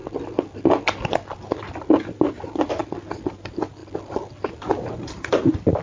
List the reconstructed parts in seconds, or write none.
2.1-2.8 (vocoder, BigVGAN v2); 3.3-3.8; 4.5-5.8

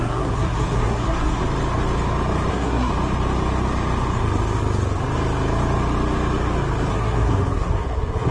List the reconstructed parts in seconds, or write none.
0.0-1.4 (codec, SNAC); 2.5-2.9; 6.9-8.3

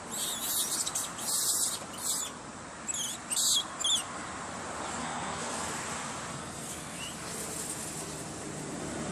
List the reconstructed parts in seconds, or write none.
5.0-5.7 (codec, SNAC); 6.3-7.0